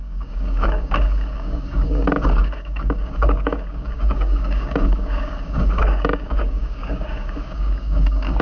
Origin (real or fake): fake